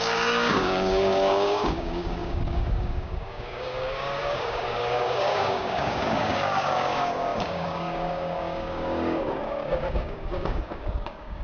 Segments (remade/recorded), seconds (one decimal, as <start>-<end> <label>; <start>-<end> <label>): 0.0-11.4 remade